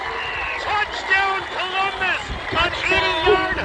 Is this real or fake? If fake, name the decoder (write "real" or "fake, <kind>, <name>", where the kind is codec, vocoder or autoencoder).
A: real